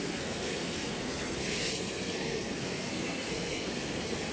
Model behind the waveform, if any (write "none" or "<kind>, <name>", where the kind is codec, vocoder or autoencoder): codec, SNAC